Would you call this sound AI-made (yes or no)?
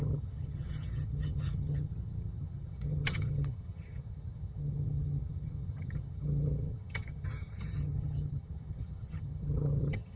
yes